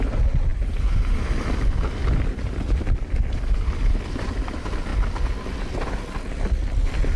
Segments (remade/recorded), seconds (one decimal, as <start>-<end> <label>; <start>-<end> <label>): 0.0-7.2 recorded